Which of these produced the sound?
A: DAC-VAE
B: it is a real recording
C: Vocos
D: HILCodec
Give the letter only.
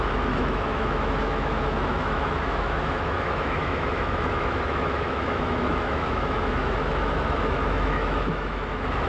A